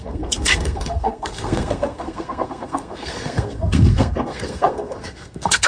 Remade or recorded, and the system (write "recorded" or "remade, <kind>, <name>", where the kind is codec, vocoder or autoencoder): remade, codec, SNAC